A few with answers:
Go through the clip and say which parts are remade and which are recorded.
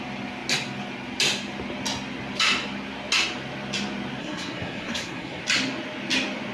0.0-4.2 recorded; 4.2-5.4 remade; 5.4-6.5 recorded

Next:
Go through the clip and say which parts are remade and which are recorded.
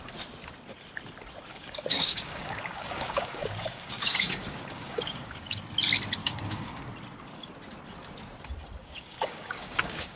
0.0-1.5 recorded; 1.5-5.6 remade; 5.6-6.2 recorded; 6.2-6.8 remade; 6.8-8.8 recorded; 8.8-10.2 remade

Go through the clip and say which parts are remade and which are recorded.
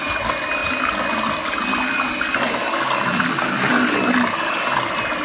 0.0-5.2 recorded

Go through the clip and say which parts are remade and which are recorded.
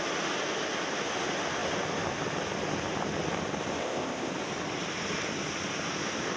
0.0-3.8 recorded; 3.8-4.3 remade; 4.3-6.4 recorded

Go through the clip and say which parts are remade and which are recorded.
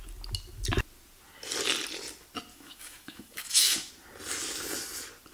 0.0-2.5 recorded; 2.5-3.9 remade; 3.9-5.3 recorded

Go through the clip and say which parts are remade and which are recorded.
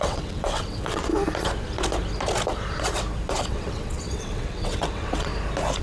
0.0-1.1 remade; 1.1-3.5 recorded; 3.5-5.3 remade; 5.3-5.8 recorded